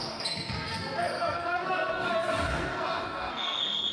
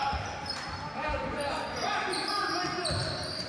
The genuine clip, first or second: second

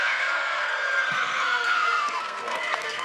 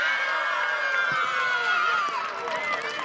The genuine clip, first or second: second